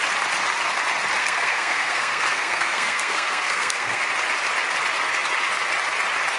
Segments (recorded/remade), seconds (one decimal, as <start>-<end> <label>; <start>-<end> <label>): 0.0-1.2 recorded; 1.2-4.0 remade; 4.0-6.4 recorded